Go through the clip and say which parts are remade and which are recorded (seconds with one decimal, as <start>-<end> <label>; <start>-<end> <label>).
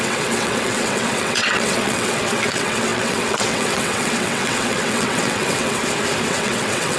0.0-5.8 remade; 5.8-6.3 recorded; 6.3-7.0 remade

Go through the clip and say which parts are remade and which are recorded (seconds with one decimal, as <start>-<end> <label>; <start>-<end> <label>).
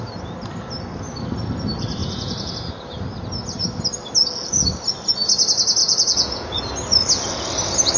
0.0-2.0 recorded; 2.0-2.5 remade; 2.5-5.8 recorded; 5.8-6.6 remade; 6.6-8.0 recorded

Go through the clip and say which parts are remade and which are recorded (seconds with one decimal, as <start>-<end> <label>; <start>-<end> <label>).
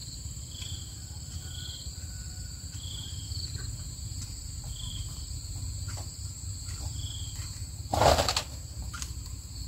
0.0-9.7 remade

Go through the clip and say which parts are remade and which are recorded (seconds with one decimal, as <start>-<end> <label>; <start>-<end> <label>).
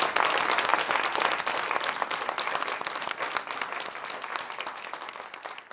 0.0-5.7 recorded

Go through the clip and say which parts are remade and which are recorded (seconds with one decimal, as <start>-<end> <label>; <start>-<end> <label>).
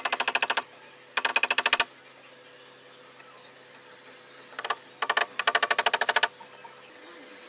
0.0-7.5 recorded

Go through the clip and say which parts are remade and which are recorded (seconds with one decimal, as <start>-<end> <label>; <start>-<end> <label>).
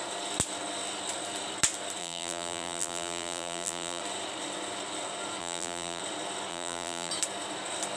0.0-2.0 recorded; 2.0-4.0 remade; 4.0-5.4 recorded; 5.4-6.0 remade; 6.0-6.5 recorded; 6.5-7.1 remade; 7.1-8.0 recorded